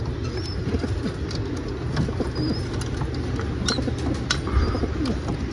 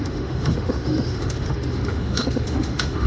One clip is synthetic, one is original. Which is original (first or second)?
first